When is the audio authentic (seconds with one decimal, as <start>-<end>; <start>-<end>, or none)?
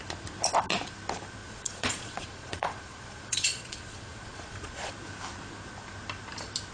0.0-1.4; 4.9-6.7